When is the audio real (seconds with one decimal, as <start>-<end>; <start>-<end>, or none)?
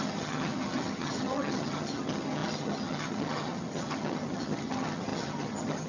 none